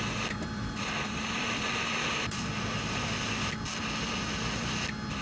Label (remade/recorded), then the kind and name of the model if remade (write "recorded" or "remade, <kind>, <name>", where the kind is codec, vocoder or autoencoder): recorded